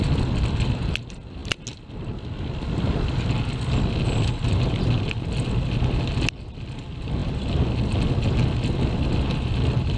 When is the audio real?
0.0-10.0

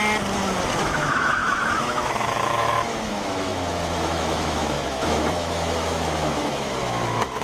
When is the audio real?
0.0-0.8

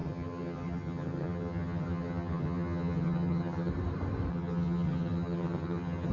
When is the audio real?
3.7-4.3

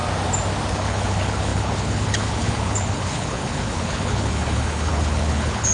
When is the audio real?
0.0-0.7